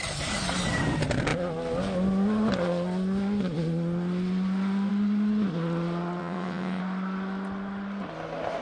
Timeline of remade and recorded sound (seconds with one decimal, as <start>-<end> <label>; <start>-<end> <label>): 0.0-6.2 recorded; 6.2-6.8 remade; 6.8-8.6 recorded